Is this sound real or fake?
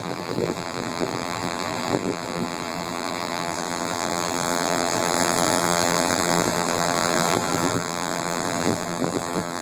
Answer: fake